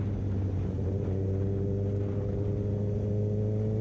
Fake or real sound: real